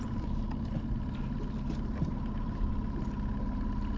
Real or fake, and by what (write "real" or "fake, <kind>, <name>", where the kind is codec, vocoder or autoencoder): real